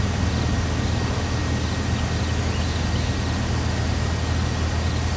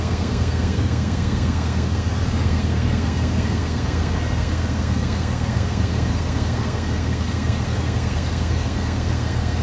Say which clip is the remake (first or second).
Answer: second